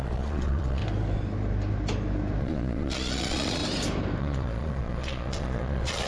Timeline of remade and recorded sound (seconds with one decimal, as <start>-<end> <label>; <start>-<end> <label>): 0.0-0.8 remade; 0.8-2.4 recorded; 2.4-3.6 remade; 3.6-4.2 recorded; 4.2-6.1 remade